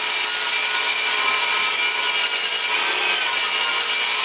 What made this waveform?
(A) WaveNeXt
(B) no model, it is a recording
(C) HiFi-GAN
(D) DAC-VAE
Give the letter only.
B